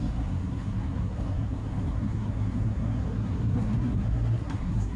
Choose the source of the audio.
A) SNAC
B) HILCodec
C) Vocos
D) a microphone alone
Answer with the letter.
A